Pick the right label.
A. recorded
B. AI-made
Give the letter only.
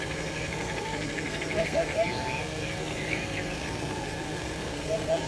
B